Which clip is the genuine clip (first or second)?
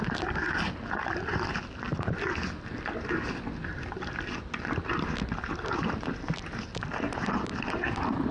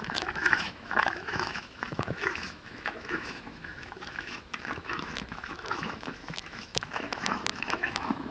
first